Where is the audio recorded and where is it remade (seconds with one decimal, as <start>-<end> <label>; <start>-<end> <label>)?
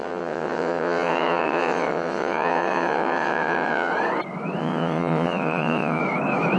0.0-3.9 remade; 3.9-4.6 recorded; 4.6-6.0 remade; 6.0-6.6 recorded